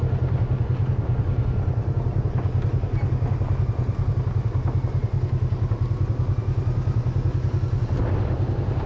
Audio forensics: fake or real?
real